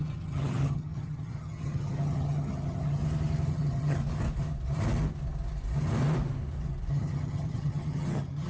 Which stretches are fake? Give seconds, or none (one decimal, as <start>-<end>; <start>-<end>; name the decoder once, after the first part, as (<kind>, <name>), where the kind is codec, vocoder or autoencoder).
0.0-3.0 (vocoder, HiFi-GAN); 3.5-4.0; 6.9-8.5